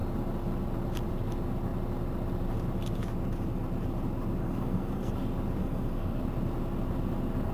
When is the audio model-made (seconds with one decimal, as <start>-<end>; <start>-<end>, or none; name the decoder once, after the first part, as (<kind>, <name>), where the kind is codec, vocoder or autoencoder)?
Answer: 4.4-5.1 (codec, SNAC); 5.6-6.2